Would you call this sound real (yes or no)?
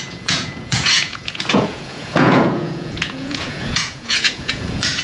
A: no